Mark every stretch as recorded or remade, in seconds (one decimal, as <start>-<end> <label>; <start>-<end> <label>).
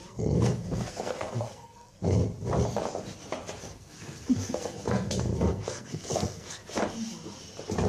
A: 0.0-2.2 remade; 2.2-3.6 recorded; 3.6-6.6 remade; 6.6-7.9 recorded